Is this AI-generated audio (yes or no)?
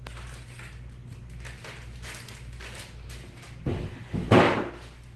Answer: no